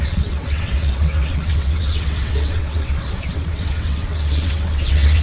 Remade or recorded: remade